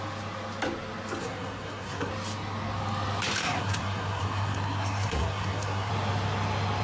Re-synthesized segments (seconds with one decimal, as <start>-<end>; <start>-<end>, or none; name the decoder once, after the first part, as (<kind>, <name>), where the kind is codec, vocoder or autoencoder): 1.2-2.1 (codec, SNAC); 3.4-5.9